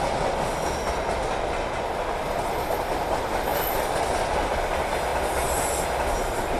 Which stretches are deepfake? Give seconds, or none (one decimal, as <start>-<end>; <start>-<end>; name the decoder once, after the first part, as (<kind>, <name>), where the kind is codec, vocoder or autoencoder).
none